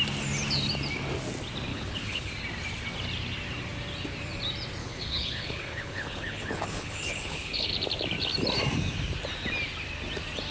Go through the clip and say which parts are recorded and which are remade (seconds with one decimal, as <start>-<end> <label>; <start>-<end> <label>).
0.0-1.7 recorded; 1.7-2.3 remade; 2.3-4.8 recorded; 4.8-7.7 remade; 7.7-10.5 recorded